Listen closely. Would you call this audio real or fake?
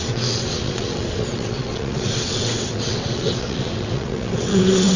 fake